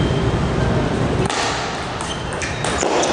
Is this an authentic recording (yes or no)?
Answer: yes